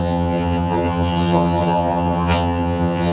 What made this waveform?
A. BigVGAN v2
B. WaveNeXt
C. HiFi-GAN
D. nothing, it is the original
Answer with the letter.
C